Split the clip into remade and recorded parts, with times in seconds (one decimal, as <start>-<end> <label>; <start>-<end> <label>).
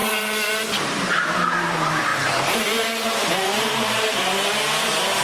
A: 0.0-5.2 remade